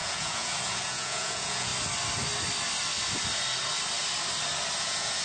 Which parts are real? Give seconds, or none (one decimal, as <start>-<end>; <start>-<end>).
1.7-4.8